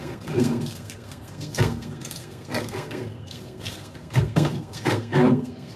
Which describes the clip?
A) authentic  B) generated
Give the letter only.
B